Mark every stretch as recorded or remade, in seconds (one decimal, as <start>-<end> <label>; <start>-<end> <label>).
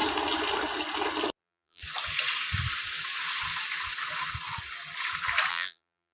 0.0-1.4 recorded; 1.4-1.8 remade; 1.8-5.5 recorded; 5.5-6.1 remade